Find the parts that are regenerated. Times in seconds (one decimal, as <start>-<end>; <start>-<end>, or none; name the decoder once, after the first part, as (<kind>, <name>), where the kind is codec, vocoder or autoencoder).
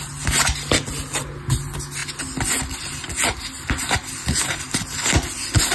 none